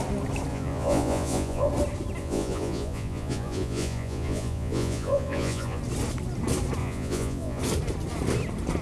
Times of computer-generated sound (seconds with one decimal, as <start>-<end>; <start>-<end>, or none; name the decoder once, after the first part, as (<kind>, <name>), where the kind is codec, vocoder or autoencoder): 0.5-1.7 (vocoder, Vocos); 2.2-5.8; 6.8-7.6